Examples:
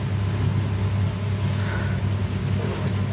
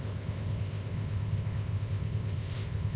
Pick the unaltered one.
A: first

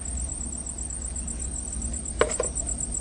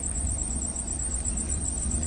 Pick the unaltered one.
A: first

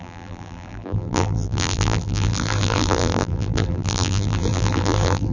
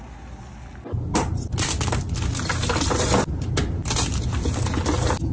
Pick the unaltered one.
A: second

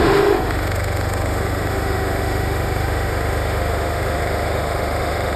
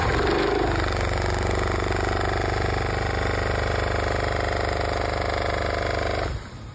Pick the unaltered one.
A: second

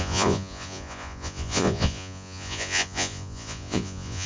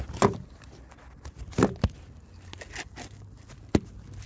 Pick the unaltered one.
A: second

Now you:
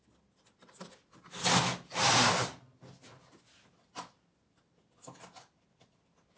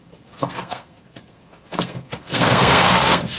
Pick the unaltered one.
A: first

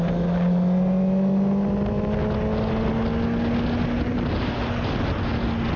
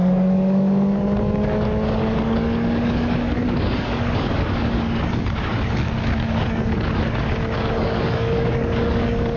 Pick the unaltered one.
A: first